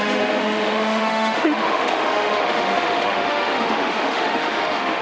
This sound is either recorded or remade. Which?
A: remade